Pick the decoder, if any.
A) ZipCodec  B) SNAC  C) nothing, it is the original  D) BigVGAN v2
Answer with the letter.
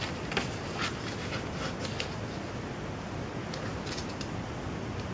C